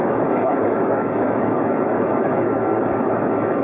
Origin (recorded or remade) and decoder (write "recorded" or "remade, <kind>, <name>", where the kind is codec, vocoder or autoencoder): remade, codec, DAC